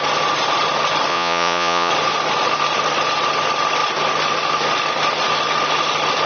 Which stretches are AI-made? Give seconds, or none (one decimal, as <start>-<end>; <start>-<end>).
1.1-1.9